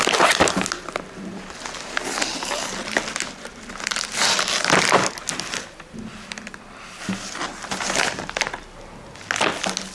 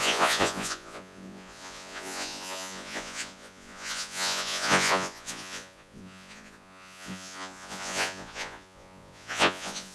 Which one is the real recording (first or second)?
first